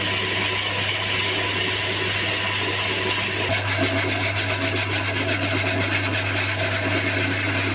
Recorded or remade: recorded